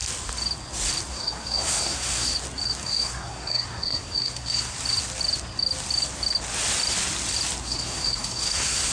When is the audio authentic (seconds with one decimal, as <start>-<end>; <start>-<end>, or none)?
0.0-1.1; 2.3-2.8; 4.7-7.6